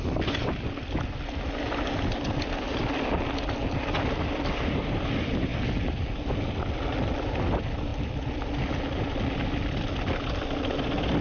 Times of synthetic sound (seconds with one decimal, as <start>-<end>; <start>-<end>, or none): none